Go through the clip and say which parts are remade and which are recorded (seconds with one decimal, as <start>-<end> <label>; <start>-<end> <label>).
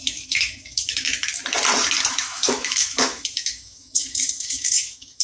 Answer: 0.0-1.4 remade; 1.4-2.1 recorded; 2.1-5.2 remade